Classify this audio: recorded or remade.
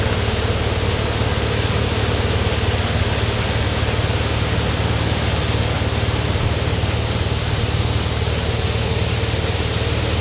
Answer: recorded